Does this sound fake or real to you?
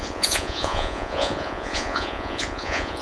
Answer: fake